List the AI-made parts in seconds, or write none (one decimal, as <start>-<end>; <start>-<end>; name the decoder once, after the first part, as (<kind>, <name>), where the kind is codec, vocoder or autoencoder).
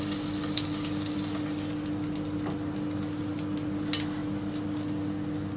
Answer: none